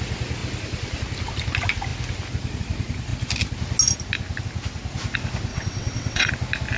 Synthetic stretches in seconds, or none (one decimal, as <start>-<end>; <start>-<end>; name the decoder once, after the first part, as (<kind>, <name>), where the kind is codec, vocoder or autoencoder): 5.5-6.3 (vocoder, WaveNeXt)